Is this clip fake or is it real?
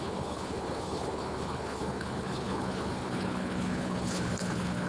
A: fake